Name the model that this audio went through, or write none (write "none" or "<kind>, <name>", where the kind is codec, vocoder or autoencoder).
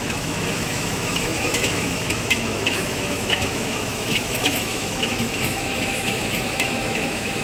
autoencoder, DAC-VAE